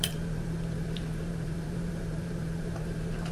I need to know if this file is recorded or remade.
remade